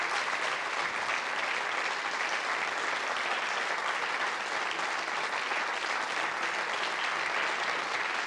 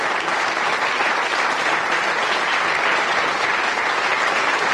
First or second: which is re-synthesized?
second